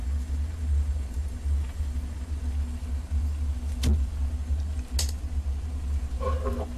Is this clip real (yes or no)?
yes